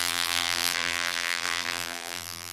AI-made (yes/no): yes